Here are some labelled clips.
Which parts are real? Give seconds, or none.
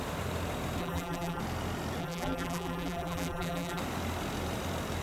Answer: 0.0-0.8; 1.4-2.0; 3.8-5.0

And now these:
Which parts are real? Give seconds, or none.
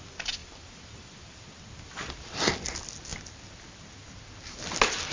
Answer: 0.0-0.4; 1.4-5.1